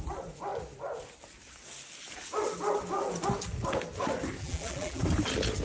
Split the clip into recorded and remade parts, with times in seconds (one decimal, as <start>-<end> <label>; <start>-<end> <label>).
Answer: 0.0-4.4 recorded; 4.4-5.0 remade; 5.0-5.6 recorded